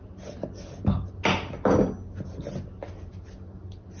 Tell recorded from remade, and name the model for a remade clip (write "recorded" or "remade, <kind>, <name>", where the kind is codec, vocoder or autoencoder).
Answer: recorded